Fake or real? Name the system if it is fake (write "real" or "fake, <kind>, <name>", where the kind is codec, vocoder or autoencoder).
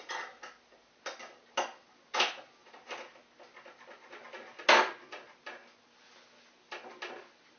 real